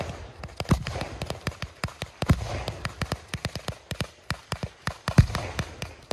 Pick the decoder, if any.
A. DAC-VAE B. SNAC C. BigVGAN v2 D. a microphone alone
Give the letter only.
D